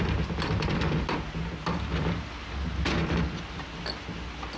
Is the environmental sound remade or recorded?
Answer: recorded